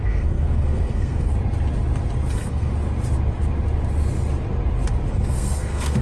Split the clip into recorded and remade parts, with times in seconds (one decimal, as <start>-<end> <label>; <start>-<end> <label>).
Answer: 0.0-1.3 remade; 1.3-2.3 recorded; 2.3-2.7 remade; 2.7-5.1 recorded; 5.1-6.0 remade